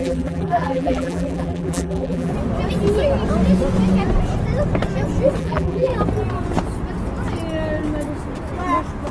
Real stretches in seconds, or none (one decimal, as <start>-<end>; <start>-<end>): 2.3-5.4; 5.9-9.1